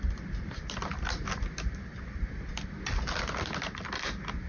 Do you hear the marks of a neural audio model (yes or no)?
no